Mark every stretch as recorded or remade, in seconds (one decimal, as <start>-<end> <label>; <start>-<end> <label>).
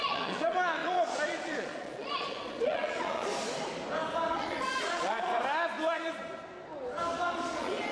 0.0-3.3 remade; 3.3-4.3 recorded; 4.3-5.3 remade; 5.3-7.3 recorded; 7.3-7.9 remade